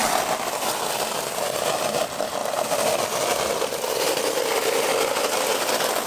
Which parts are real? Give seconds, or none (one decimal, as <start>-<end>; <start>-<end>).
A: 0.0-6.1